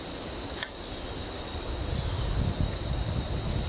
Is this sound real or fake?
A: real